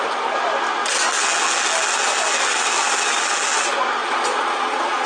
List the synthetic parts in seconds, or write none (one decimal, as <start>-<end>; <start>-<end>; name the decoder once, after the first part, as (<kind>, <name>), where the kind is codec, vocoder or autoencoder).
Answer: 4.0-5.1 (vocoder, Vocos)